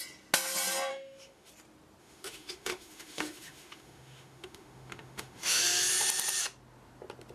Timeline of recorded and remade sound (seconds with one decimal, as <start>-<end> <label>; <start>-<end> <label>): 0.0-0.9 recorded; 0.9-1.5 remade; 1.5-2.0 recorded; 2.0-5.6 remade; 5.6-7.3 recorded